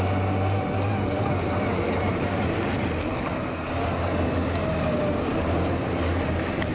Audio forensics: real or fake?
real